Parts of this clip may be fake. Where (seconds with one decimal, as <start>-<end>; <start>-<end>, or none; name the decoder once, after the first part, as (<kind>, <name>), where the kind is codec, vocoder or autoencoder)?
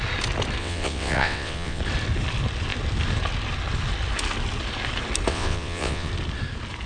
0.6-1.8 (vocoder, WaveNeXt); 5.3-6.1